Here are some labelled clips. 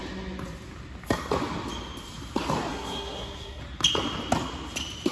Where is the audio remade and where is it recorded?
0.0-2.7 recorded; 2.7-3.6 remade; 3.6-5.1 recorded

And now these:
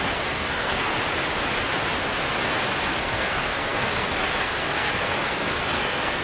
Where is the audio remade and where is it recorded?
0.0-0.9 remade; 0.9-2.9 recorded; 2.9-6.2 remade

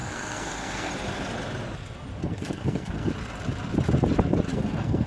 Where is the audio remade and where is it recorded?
0.0-0.9 remade; 0.9-2.2 recorded; 2.2-3.1 remade; 3.1-4.5 recorded; 4.5-5.1 remade

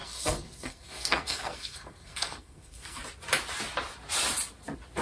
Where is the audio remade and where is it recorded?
0.0-3.0 remade; 3.0-5.0 recorded

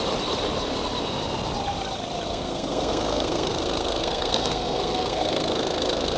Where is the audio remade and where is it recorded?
0.0-2.3 recorded; 2.3-6.2 remade

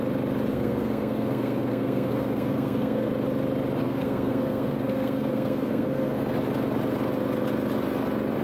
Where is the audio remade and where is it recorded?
0.0-0.5 recorded; 0.5-3.1 remade; 3.1-3.8 recorded; 3.8-6.2 remade; 6.2-8.4 recorded

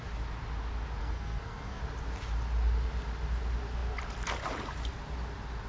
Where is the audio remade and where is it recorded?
0.0-1.0 recorded; 1.0-1.8 remade; 1.8-5.7 recorded